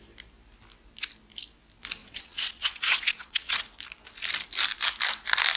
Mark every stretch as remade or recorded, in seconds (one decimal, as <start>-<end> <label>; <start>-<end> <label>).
0.0-2.0 recorded; 2.0-3.6 remade; 3.6-5.6 recorded